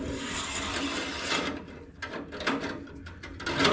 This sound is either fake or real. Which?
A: real